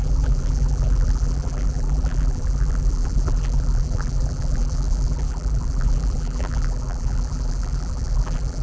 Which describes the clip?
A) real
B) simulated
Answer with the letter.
B